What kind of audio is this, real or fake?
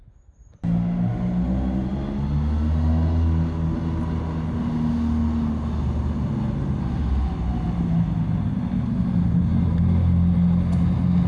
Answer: real